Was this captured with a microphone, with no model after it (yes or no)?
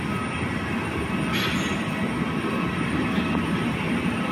yes